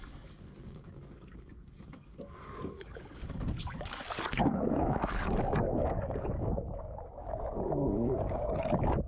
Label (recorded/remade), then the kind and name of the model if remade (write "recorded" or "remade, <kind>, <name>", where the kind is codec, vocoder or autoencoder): remade, codec, DAC